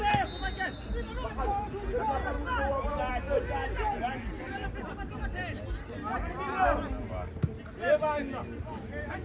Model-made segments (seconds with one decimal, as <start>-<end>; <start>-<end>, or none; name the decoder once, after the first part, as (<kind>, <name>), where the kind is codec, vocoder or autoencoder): none